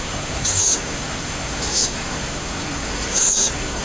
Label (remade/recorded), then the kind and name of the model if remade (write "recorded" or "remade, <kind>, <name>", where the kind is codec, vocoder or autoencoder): remade, codec, SNAC